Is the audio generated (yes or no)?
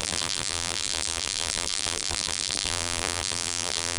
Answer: yes